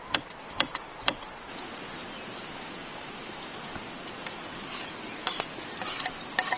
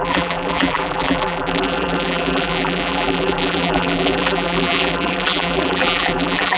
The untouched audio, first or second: first